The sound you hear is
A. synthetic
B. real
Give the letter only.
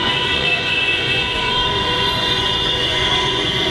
A